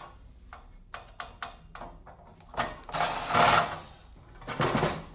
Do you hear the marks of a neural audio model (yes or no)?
no